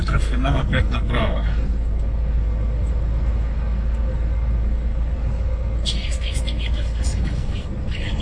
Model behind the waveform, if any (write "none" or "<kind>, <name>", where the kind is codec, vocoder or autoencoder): codec, SNAC